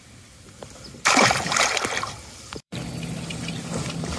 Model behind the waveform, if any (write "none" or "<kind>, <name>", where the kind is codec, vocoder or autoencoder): vocoder, BigVGAN v2